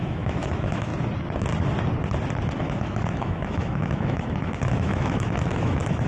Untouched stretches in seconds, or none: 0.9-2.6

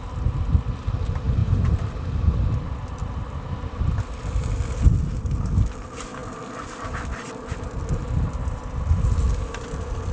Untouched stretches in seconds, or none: 0.0-10.1

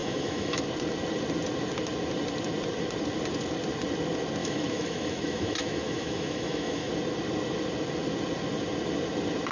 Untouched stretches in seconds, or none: 0.6-4.4; 6.9-9.5

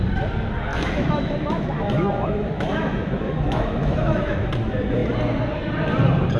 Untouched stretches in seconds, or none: 0.0-0.7; 4.5-6.4